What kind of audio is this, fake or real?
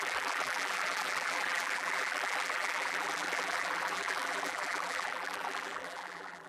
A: fake